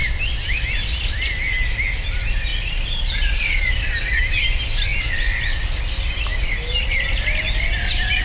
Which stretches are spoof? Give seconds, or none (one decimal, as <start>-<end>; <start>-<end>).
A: 2.5-3.7